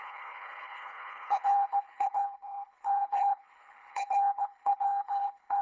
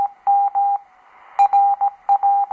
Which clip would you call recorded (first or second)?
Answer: second